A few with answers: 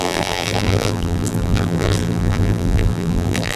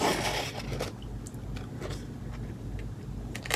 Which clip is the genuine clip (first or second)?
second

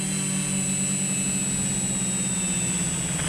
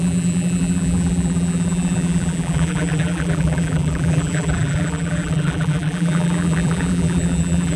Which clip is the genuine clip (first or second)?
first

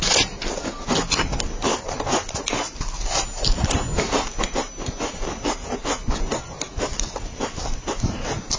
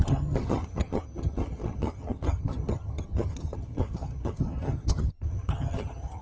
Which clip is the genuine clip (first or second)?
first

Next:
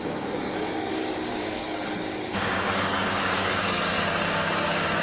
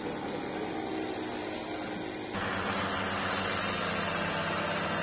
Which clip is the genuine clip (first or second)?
second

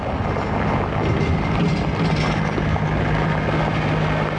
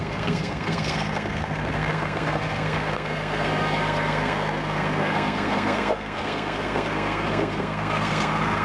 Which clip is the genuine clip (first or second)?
first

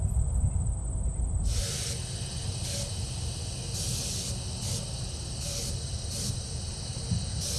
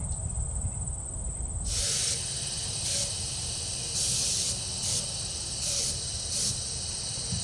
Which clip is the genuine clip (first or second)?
first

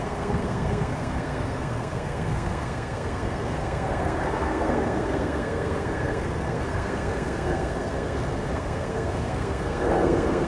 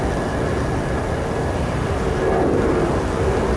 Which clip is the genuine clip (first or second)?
second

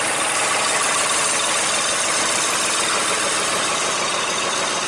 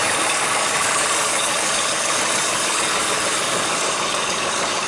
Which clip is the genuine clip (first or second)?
first